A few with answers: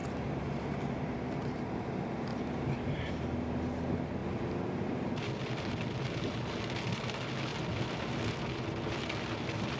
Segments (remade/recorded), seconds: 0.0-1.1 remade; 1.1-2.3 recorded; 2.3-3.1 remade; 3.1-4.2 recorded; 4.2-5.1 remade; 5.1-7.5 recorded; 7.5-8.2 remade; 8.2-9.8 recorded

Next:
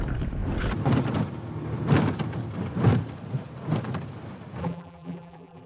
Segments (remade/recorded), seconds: 0.0-4.6 recorded; 4.6-5.7 remade

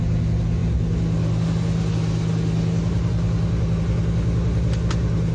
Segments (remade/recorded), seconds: 0.0-5.3 recorded

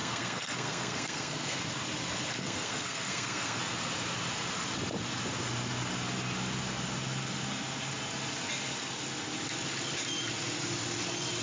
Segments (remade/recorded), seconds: 0.0-1.6 remade; 1.6-2.4 recorded; 2.4-3.6 remade; 3.6-11.4 recorded

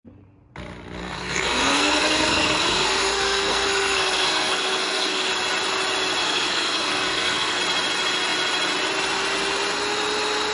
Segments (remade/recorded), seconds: 0.0-1.0 recorded; 1.0-5.3 remade; 5.3-6.2 recorded; 6.2-7.6 remade; 7.6-10.5 recorded